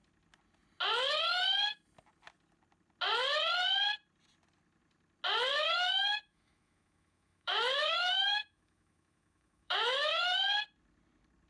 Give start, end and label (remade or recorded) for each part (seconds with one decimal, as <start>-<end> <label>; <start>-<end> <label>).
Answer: 0.0-5.5 recorded; 5.5-10.4 remade; 10.4-11.5 recorded